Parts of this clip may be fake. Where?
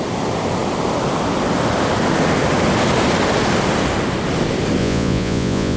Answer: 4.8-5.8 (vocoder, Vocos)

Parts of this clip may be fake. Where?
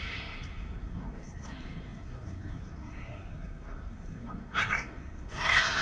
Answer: 0.0-5.8 (codec, SNAC)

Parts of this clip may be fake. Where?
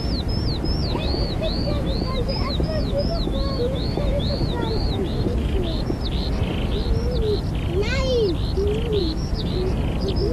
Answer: 0.8-6.0 (autoencoder, DAC-VAE); 9.0-9.5